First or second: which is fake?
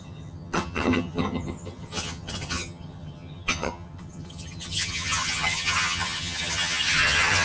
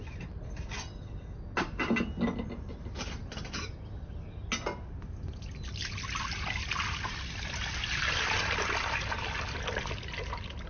first